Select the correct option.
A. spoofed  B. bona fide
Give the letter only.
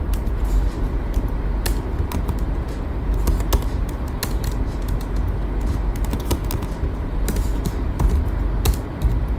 B